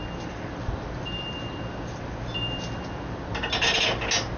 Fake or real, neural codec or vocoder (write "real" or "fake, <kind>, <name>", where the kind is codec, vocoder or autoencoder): real